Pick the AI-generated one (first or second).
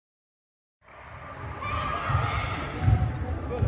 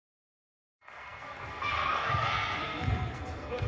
second